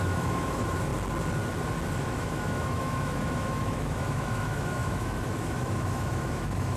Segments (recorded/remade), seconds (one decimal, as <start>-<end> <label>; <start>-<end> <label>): 0.0-0.9 remade; 0.9-2.0 recorded; 2.0-6.8 remade